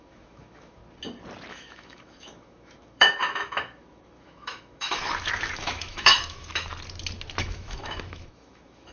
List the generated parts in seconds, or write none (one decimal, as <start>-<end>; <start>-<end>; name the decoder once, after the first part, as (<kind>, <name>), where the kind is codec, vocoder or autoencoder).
0.0-0.8 (autoencoder, DAC-VAE); 1.5-6.7; 7.4-8.9